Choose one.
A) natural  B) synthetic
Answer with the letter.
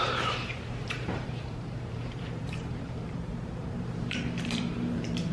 B